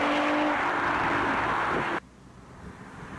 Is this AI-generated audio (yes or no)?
no